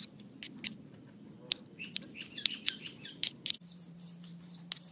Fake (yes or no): yes